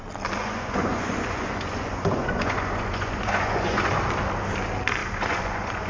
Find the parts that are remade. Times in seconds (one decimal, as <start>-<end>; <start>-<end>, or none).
0.4-3.9; 5.0-5.9